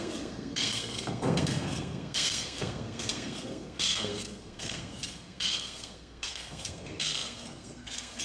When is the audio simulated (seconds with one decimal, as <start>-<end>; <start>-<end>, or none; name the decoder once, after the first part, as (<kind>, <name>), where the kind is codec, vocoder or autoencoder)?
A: 0.0-8.2 (codec, SNAC)